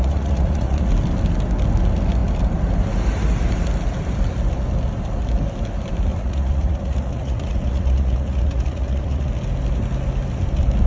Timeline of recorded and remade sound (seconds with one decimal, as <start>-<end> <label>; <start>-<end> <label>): 0.0-0.9 remade; 0.9-6.1 recorded; 6.1-9.3 remade; 9.3-10.9 recorded

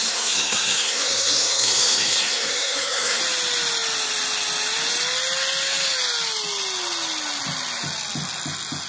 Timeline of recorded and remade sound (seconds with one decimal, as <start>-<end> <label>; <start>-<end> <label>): 0.0-3.2 remade; 3.2-8.9 recorded

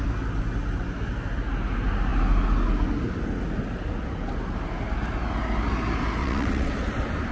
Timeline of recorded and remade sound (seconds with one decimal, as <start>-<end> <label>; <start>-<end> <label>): 0.0-6.2 recorded; 6.2-6.7 remade; 6.7-7.3 recorded

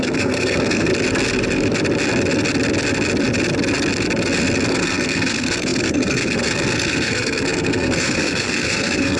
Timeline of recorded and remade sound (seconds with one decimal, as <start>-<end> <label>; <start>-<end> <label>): 0.0-0.9 remade; 0.9-4.7 recorded; 4.7-9.2 remade

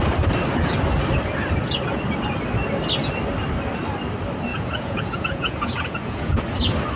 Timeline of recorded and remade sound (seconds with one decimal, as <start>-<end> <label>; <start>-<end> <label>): 0.0-4.5 recorded; 4.5-6.4 remade; 6.4-7.0 recorded

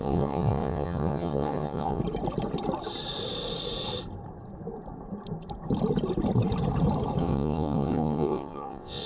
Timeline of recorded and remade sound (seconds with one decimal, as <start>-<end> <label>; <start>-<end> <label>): 0.0-2.0 remade; 2.0-7.2 recorded; 7.2-9.1 remade

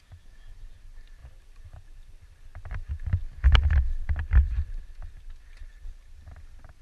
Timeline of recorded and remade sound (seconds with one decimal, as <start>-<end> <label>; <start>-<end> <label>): 0.0-1.2 recorded; 1.2-3.1 remade; 3.1-4.2 recorded; 4.2-5.9 remade; 5.9-6.8 recorded